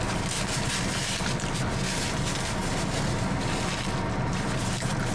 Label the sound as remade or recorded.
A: recorded